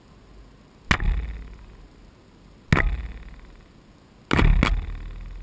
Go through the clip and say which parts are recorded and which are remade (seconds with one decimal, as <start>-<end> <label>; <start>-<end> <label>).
0.0-5.4 recorded